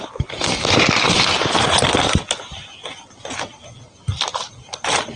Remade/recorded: recorded